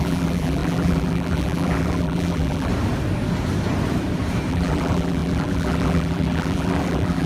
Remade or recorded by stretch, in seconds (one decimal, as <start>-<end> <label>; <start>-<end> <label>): 0.0-2.7 remade; 2.7-4.5 recorded; 4.5-7.3 remade